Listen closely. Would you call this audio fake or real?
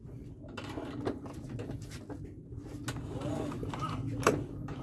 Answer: real